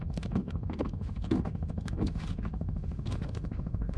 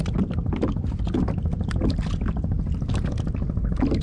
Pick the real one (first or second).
second